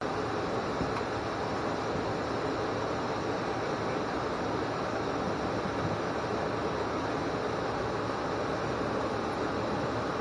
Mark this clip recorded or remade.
recorded